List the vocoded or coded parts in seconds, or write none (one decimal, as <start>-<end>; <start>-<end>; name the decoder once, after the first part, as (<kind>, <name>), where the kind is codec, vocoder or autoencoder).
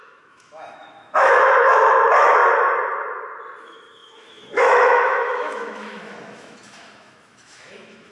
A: 0.0-2.4 (autoencoder, DAC-VAE); 3.6-8.1